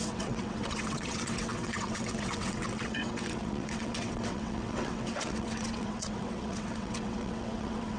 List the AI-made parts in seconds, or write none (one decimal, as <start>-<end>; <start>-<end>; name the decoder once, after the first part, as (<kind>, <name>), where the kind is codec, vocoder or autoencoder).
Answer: 0.0-8.0 (vocoder, WaveNeXt)